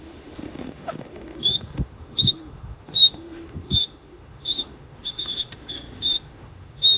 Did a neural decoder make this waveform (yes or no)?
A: yes